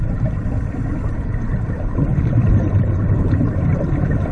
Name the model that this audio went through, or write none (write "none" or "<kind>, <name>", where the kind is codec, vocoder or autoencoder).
vocoder, BigVGAN v2